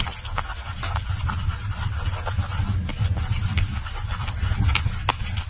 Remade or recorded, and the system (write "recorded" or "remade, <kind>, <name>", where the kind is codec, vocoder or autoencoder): recorded